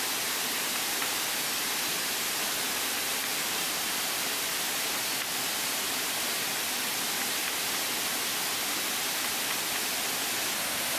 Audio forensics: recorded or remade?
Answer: recorded